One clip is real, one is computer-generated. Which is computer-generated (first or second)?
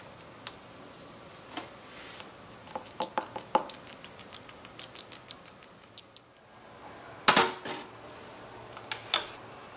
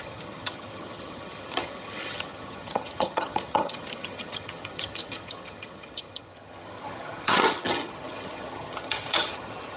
second